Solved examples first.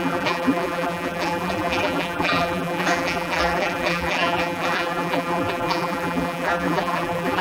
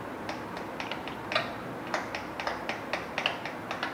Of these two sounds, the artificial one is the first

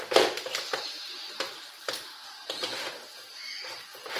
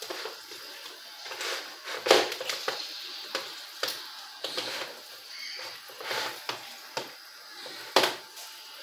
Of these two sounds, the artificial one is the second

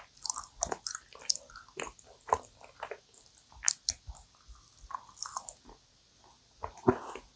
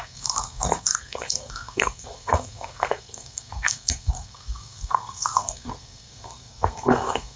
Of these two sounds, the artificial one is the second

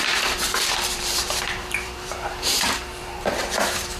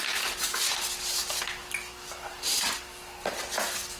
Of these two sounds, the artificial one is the first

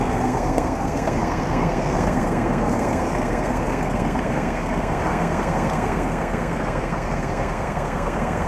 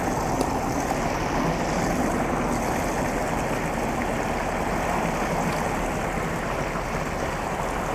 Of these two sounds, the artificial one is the first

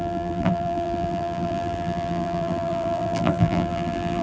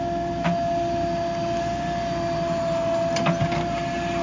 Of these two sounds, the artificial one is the first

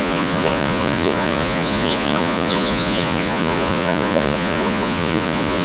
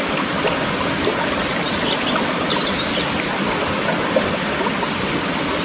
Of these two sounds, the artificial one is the first